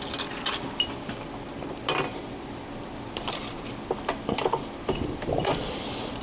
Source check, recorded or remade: recorded